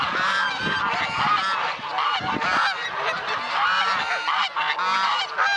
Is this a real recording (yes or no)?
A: yes